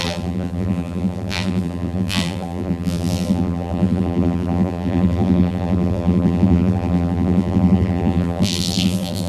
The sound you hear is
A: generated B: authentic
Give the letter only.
A